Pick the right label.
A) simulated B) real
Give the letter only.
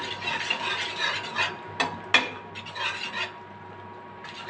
B